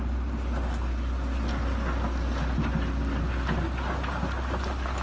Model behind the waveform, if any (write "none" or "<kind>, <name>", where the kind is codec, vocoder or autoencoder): none